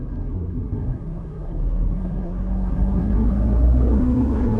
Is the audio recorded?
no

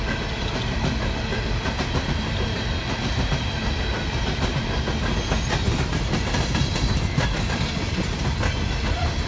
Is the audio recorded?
yes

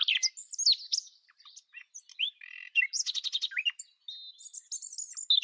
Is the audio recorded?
yes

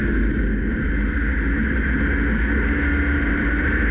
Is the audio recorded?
yes